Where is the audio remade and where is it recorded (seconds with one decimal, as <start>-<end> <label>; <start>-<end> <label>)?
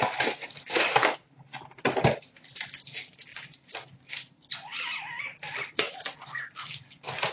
0.0-7.3 recorded